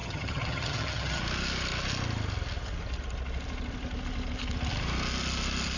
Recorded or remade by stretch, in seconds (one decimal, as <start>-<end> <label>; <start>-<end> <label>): 0.0-1.2 remade; 1.2-5.8 recorded